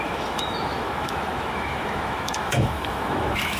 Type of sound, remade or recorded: remade